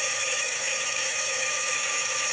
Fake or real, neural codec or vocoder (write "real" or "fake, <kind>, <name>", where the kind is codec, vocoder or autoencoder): fake, autoencoder, DAC-VAE